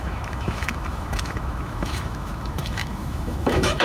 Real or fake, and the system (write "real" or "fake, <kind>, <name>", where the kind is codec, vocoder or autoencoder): fake, autoencoder, DAC-VAE